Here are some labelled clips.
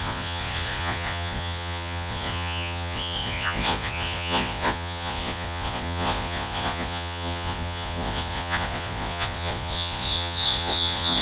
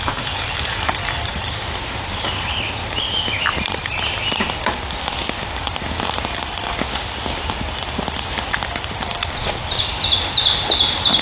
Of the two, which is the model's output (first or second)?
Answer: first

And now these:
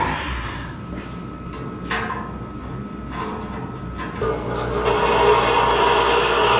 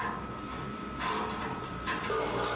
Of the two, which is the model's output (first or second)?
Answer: second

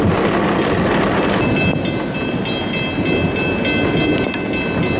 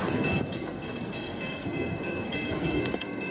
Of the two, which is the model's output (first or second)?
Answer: second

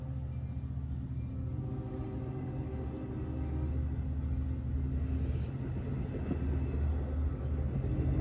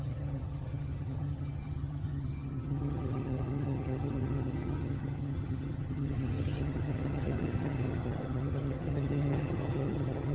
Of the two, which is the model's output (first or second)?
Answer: second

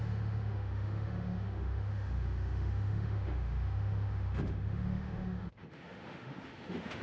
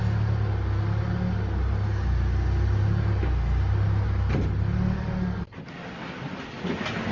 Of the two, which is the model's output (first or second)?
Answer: first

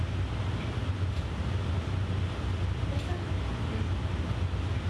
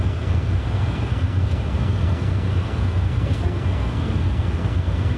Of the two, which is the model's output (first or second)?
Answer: second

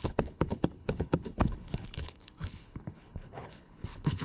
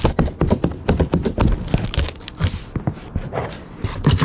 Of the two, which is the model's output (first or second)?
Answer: first